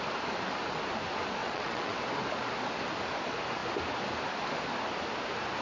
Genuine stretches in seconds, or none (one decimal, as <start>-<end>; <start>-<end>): 0.0-1.4; 2.0-5.6